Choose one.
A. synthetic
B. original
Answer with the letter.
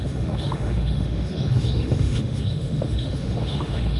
A